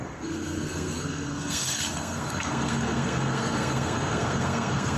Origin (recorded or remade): remade